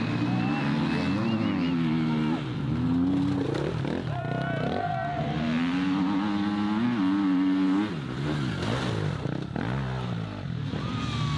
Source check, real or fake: real